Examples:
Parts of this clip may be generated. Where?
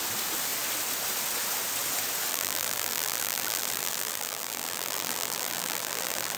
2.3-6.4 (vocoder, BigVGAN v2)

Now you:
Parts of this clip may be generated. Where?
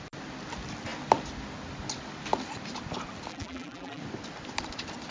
3.3-4.0 (vocoder, BigVGAN v2)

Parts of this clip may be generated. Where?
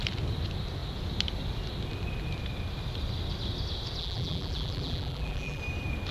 4.0-5.6 (vocoder, BigVGAN v2)